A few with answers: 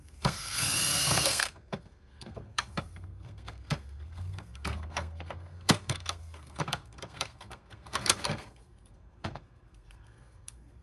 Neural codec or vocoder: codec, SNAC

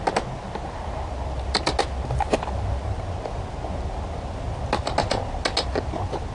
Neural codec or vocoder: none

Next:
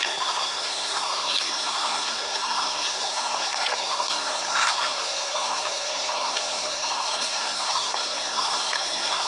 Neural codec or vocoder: codec, SNAC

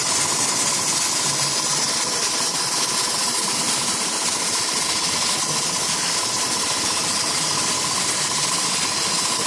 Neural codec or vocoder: none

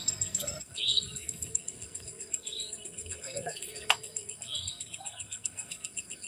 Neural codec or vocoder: codec, SNAC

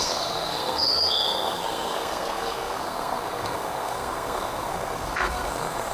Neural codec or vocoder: codec, SNAC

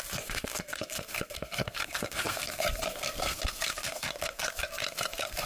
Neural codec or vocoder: codec, SNAC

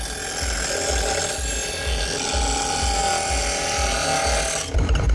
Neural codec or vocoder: none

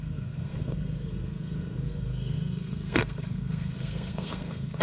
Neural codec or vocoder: codec, SNAC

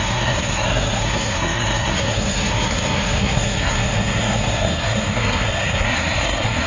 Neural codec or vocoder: codec, SNAC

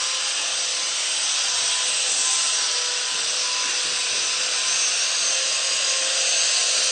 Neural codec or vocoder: none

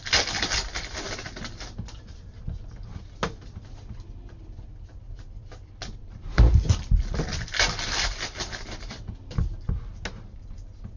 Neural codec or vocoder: none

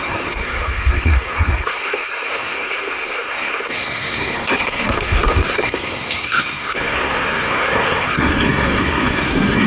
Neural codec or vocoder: codec, SNAC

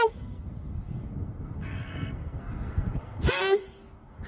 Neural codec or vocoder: codec, SNAC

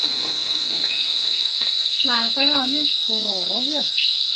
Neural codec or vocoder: codec, SNAC